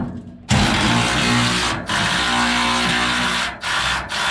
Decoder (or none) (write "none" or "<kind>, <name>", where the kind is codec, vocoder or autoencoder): none